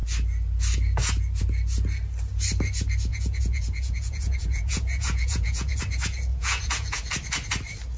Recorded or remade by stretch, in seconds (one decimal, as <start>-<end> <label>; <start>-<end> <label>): 0.0-3.1 recorded; 3.1-5.8 remade; 5.8-6.3 recorded; 6.3-7.1 remade; 7.1-8.0 recorded